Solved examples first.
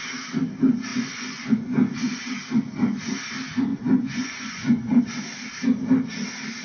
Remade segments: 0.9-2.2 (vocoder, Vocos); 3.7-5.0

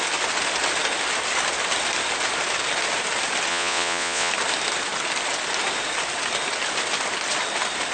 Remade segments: 3.5-4.3 (vocoder, Vocos)

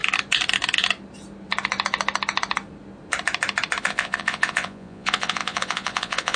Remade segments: 3.8-6.4 (vocoder, Vocos)

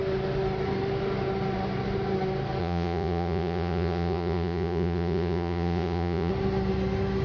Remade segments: 2.6-6.3 (vocoder, Vocos)

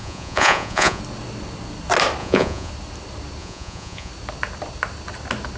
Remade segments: 0.0-1.0 (vocoder, Vocos); 2.2-2.7; 3.4-4.1

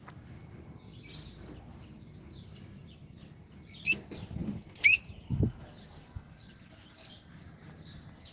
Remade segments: none